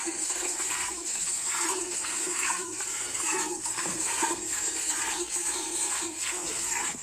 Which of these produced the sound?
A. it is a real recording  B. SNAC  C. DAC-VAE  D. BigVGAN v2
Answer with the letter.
B